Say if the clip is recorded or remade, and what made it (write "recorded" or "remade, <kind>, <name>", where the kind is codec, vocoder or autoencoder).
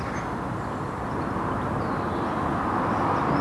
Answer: recorded